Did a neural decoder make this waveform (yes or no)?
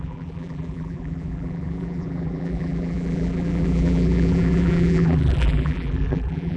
yes